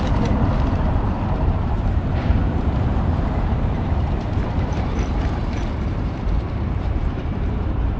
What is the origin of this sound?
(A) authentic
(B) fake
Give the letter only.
B